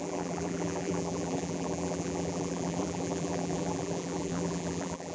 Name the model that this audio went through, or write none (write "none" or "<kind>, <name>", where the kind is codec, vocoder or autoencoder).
vocoder, BigVGAN v2